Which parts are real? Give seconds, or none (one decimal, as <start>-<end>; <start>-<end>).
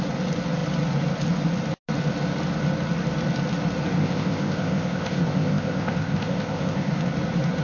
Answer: 0.0-4.0; 6.9-7.6